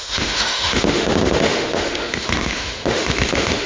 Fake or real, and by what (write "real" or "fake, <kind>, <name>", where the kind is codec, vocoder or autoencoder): fake, autoencoder, DAC-VAE